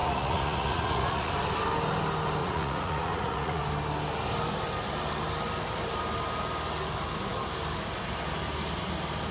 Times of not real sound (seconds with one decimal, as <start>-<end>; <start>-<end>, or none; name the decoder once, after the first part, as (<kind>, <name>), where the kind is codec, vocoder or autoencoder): 0.0-1.3 (vocoder, Vocos); 2.4-3.6